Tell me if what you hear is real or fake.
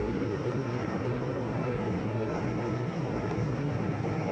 fake